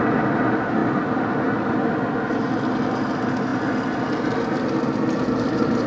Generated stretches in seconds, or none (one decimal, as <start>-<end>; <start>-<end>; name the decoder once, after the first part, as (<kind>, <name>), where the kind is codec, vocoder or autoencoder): none